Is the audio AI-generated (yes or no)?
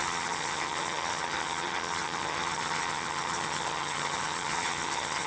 yes